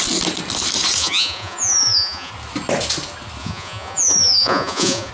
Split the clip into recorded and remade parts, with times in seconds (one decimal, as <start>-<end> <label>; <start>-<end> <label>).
0.0-1.0 recorded; 1.0-2.3 remade; 2.3-3.4 recorded; 3.4-5.1 remade